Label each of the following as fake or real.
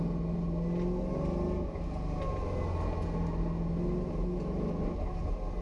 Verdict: real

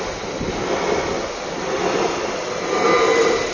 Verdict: real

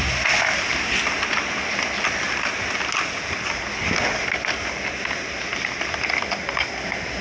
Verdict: real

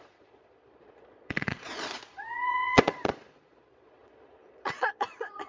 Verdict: fake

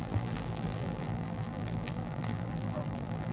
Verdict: fake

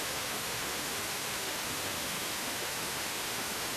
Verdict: fake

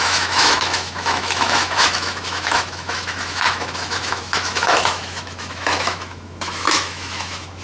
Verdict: fake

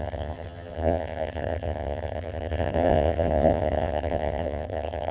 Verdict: fake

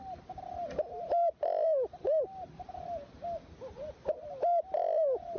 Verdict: real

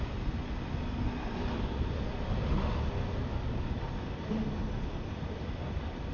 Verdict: real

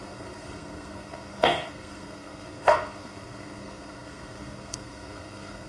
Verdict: fake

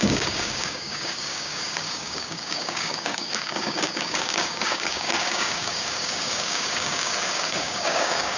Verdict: fake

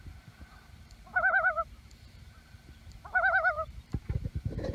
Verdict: fake